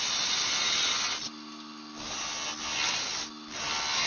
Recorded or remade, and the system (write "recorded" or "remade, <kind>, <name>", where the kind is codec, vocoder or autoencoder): recorded